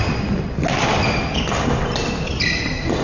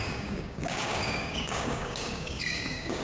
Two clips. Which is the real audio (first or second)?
first